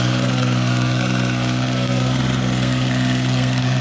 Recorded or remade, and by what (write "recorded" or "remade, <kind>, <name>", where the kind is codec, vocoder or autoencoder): remade, codec, SNAC